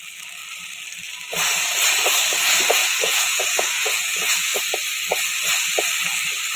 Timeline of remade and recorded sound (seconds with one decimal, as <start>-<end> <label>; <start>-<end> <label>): 0.0-2.8 recorded; 2.8-4.6 remade; 4.6-6.6 recorded